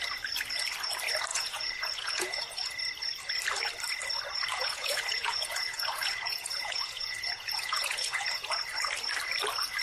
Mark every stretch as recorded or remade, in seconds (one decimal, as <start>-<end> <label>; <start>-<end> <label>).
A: 0.0-1.3 recorded; 1.3-2.7 remade; 2.7-4.5 recorded; 4.5-8.6 remade; 8.6-9.8 recorded